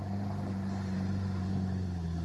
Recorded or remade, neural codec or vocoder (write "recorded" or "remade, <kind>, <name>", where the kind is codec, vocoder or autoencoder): recorded